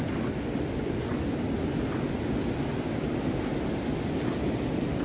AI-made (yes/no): no